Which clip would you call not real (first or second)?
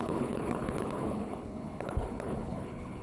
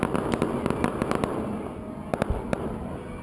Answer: first